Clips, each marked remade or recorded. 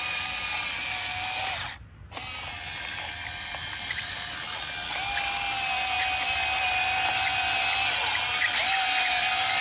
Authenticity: recorded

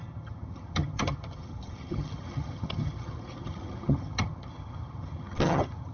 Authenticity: remade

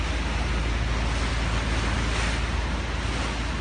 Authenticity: recorded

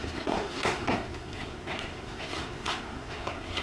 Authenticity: remade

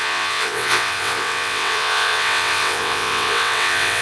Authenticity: remade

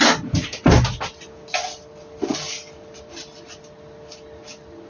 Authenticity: recorded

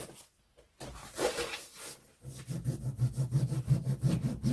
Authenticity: recorded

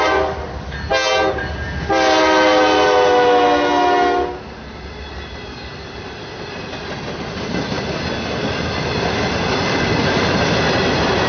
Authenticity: recorded